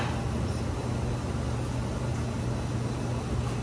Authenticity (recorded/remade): recorded